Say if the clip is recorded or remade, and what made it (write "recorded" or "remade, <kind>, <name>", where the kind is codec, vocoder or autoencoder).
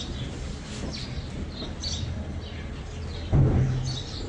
recorded